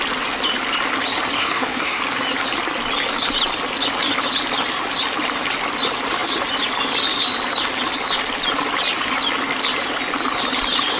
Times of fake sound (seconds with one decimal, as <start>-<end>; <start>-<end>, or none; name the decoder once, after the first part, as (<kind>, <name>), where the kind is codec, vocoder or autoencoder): 1.4-2.0 (codec, SNAC)